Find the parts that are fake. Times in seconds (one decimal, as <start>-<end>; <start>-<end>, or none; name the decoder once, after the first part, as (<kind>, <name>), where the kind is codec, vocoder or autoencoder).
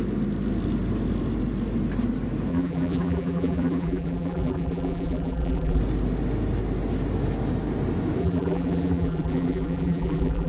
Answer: 2.5-5.8 (vocoder, BigVGAN v2); 8.2-10.5